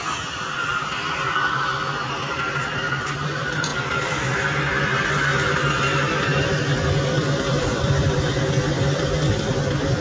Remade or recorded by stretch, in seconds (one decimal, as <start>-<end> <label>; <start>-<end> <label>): 0.0-5.3 remade; 5.3-7.1 recorded; 7.1-10.0 remade